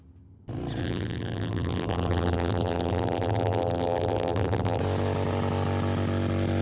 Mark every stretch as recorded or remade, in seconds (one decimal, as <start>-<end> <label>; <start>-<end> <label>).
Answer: 0.0-0.8 recorded; 0.8-4.8 remade; 4.8-6.6 recorded